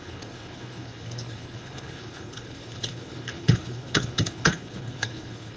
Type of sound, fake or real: fake